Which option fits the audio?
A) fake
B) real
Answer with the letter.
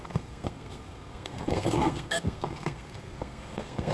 A